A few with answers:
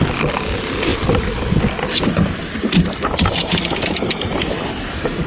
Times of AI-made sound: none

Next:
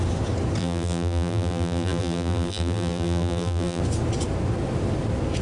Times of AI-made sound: 0.6-3.8 (vocoder, BigVGAN v2)

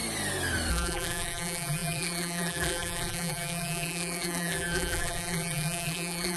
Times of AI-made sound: 0.7-6.4 (vocoder, BigVGAN v2)

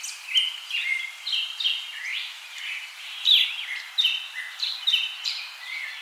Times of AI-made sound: 2.1-6.0 (vocoder, BigVGAN v2)

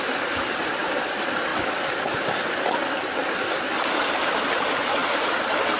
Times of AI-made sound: none

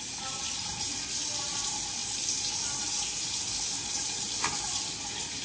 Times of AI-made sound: none